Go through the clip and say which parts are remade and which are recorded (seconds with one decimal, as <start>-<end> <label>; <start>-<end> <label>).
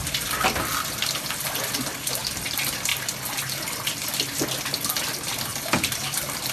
0.0-0.7 remade; 0.7-2.9 recorded; 2.9-4.1 remade; 4.1-5.5 recorded; 5.5-6.5 remade